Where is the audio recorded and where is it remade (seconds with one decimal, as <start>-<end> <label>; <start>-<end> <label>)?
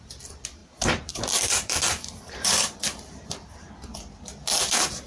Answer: 0.0-0.6 recorded; 0.6-3.7 remade; 3.7-5.1 recorded